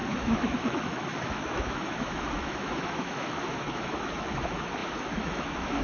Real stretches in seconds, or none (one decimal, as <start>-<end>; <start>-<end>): none